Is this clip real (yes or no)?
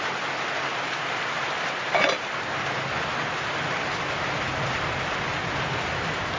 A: yes